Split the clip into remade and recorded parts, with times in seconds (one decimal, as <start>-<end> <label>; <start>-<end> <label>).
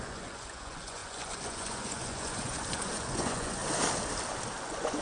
0.0-3.6 remade; 3.6-4.6 recorded; 4.6-5.0 remade